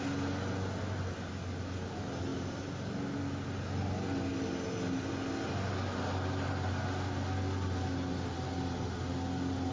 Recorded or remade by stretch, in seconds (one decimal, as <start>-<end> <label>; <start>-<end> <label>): 0.0-9.7 recorded